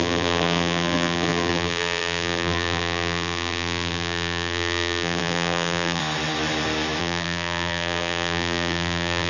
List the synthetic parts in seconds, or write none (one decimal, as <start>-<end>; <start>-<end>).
0.0-6.0; 7.0-9.3